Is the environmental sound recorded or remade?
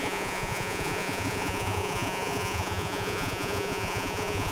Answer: remade